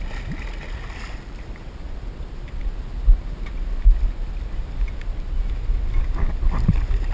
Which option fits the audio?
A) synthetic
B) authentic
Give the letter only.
B